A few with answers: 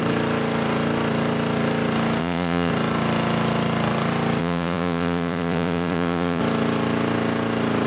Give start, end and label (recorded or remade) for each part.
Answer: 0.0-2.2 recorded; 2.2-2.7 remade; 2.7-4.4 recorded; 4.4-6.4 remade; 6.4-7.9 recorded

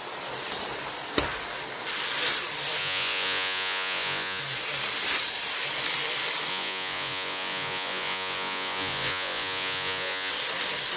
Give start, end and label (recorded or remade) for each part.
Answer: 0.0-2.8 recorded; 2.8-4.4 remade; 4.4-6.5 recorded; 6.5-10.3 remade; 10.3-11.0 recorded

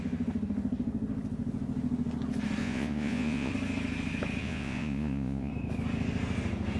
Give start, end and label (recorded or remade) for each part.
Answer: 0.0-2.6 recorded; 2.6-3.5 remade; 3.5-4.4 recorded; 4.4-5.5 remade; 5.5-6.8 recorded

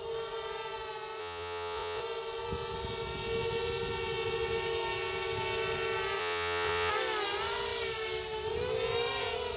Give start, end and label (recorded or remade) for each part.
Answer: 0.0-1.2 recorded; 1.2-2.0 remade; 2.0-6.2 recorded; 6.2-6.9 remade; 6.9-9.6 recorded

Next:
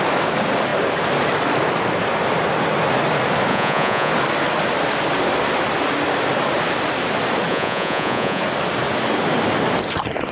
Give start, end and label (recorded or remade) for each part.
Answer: 0.0-3.5 recorded; 3.5-4.1 remade; 4.1-7.5 recorded; 7.5-8.4 remade; 8.4-10.3 recorded

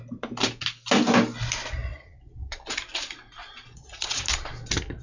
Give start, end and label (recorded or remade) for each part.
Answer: 0.0-1.8 recorded; 1.8-2.6 remade; 2.6-3.4 recorded; 3.4-4.2 remade; 4.2-5.0 recorded

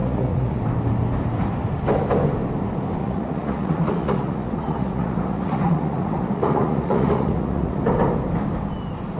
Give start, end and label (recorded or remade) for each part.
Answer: 0.0-0.6 remade; 0.6-3.0 recorded; 3.0-7.8 remade; 7.8-9.2 recorded